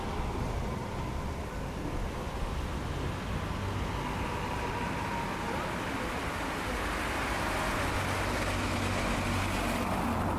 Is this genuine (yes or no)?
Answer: yes